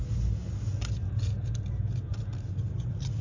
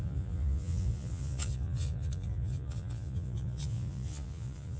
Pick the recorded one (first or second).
first